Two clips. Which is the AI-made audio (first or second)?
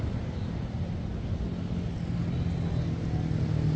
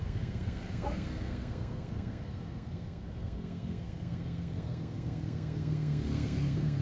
second